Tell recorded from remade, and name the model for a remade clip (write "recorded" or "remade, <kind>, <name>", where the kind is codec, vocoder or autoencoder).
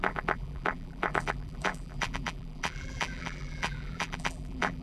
remade, vocoder, BigVGAN v2